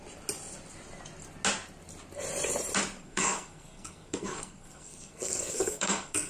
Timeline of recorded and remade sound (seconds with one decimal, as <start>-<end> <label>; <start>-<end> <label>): 0.0-3.0 recorded; 3.0-6.3 remade